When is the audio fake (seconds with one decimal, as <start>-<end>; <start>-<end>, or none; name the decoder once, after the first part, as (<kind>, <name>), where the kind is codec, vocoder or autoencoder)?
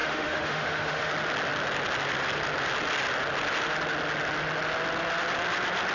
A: 0.0-1.1 (autoencoder, DAC-VAE)